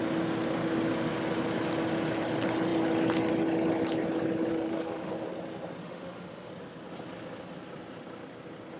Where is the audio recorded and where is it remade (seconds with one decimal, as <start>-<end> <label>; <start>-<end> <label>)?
0.0-4.5 recorded; 4.5-5.1 remade; 5.1-5.8 recorded; 5.8-6.5 remade; 6.5-8.8 recorded

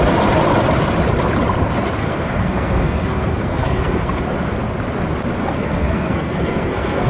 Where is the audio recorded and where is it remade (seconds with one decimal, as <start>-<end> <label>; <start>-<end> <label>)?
0.0-2.0 recorded; 2.0-4.2 remade; 4.2-5.4 recorded; 5.4-7.1 remade

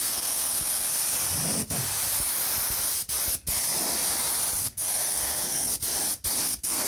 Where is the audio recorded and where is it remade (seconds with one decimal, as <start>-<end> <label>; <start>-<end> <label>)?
0.0-1.0 remade; 1.0-4.6 recorded; 4.6-5.7 remade; 5.7-6.4 recorded; 6.4-6.9 remade

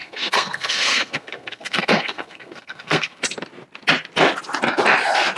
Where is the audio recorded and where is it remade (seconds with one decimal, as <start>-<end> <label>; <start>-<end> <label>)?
0.0-3.2 remade; 3.2-5.4 recorded

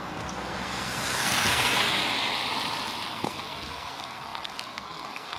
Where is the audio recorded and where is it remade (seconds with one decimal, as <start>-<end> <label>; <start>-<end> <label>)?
0.0-2.0 remade; 2.0-3.1 recorded; 3.1-5.4 remade

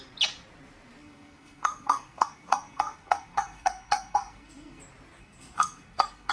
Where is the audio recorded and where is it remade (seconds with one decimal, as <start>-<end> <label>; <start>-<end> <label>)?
0.0-1.0 recorded; 1.0-4.8 remade; 4.8-5.2 recorded; 5.2-6.3 remade